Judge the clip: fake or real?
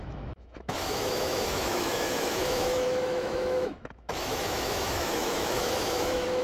fake